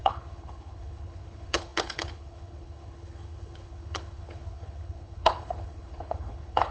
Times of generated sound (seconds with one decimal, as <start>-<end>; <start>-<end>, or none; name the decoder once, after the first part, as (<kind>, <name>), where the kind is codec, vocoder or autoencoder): 0.0-6.7 (codec, HILCodec)